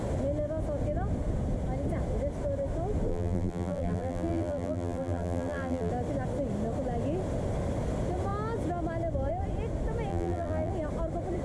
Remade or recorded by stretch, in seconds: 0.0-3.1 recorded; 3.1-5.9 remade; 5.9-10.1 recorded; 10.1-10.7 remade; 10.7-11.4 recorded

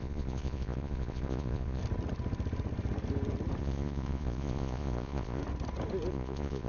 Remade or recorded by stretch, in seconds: 0.0-1.8 remade; 1.8-3.6 recorded; 3.6-5.4 remade; 5.4-6.1 recorded; 6.1-6.7 remade

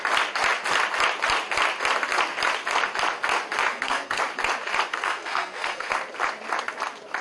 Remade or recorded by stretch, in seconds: 0.0-3.7 recorded; 3.7-4.2 remade; 4.2-4.9 recorded; 4.9-5.9 remade; 5.9-7.2 recorded

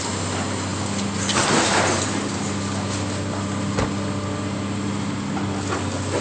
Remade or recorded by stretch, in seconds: 0.0-6.2 recorded

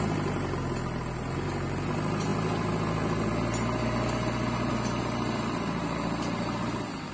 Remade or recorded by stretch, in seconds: 0.0-7.1 recorded